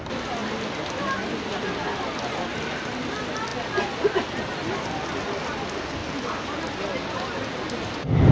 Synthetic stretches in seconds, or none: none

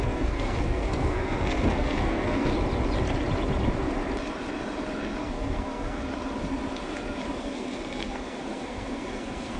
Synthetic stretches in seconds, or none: 0.0-2.5 (codec, SNAC); 5.2-6.0; 7.4-9.6

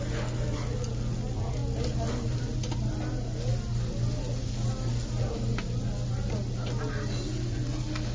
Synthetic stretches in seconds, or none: none

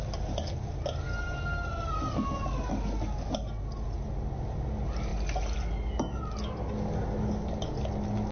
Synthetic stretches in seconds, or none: none

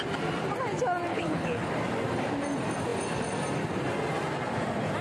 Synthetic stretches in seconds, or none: 1.1-1.7 (codec, HILCodec)

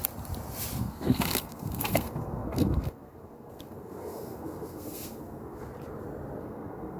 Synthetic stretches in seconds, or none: 0.8-5.7 (codec, SNAC); 6.4-7.0

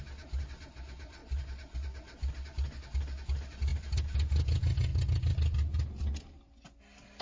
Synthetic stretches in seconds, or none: none